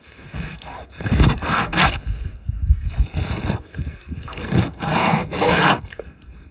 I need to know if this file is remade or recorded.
remade